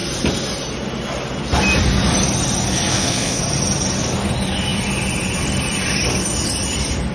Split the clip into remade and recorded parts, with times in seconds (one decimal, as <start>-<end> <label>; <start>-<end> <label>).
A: 0.0-2.9 recorded; 2.9-3.4 remade; 3.4-7.1 recorded